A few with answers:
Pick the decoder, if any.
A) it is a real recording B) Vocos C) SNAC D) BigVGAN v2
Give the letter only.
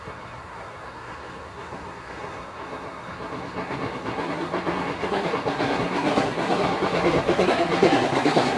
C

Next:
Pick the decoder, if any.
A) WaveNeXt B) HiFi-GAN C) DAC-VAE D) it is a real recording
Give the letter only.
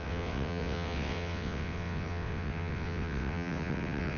A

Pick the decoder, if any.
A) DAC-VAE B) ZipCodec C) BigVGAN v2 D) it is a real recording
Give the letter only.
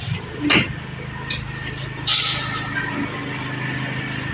D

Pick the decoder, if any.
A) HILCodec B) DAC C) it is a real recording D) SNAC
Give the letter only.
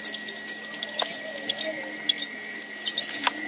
C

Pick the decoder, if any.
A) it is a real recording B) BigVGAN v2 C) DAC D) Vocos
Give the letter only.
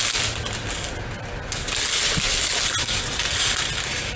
A